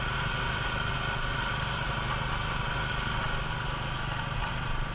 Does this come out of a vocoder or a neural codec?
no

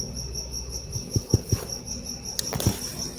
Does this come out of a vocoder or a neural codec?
no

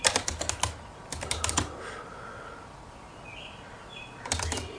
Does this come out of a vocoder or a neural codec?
no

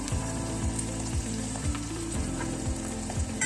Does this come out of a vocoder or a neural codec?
yes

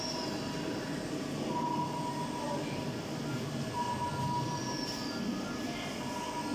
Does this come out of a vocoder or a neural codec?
no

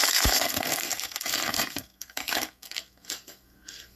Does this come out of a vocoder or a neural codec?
yes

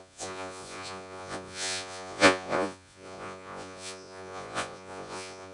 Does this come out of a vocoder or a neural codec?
yes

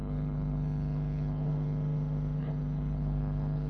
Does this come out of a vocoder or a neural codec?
yes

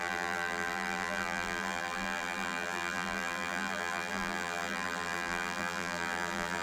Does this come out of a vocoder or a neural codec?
yes